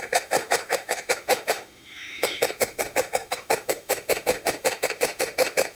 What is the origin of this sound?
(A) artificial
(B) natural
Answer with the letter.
A